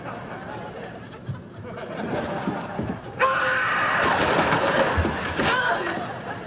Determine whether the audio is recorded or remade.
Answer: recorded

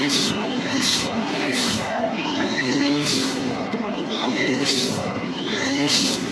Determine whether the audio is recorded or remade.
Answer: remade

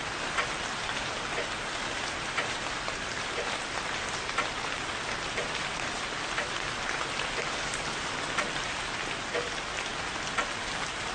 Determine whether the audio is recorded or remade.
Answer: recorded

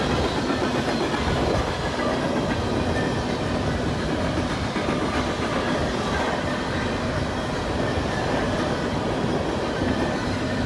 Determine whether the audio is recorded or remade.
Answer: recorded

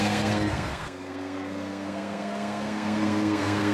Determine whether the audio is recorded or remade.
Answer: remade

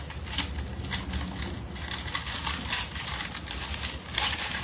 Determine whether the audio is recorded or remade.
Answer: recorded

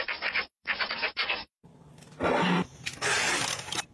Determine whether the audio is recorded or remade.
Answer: recorded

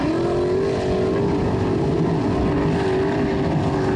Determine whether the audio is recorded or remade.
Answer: recorded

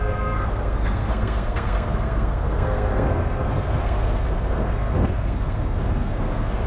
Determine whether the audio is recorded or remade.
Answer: remade